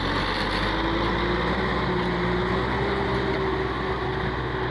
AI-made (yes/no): no